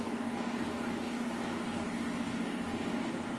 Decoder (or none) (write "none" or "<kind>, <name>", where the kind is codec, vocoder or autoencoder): codec, DAC